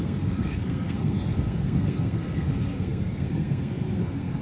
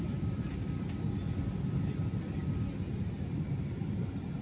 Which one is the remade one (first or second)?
first